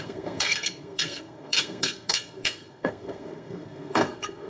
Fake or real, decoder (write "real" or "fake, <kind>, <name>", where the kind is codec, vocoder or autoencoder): fake, codec, SNAC